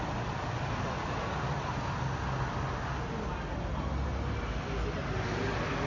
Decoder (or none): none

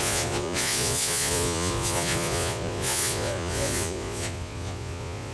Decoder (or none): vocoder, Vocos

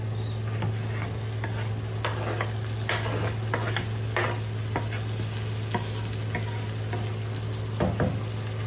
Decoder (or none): none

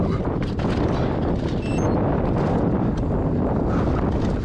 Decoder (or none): none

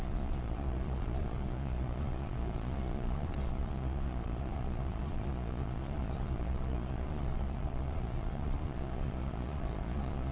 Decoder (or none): vocoder, Vocos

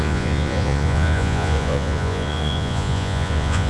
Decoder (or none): vocoder, Vocos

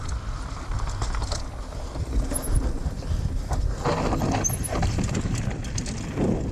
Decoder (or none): none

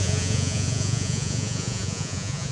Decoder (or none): vocoder, Vocos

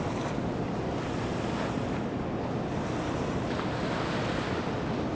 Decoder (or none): none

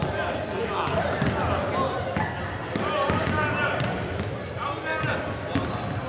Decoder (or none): none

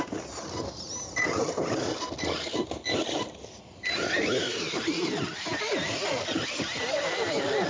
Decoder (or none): none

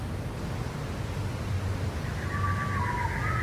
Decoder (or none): none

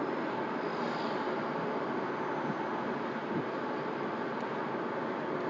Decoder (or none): none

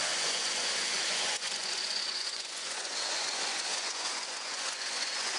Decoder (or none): vocoder, Vocos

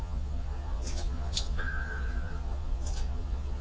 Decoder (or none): vocoder, Vocos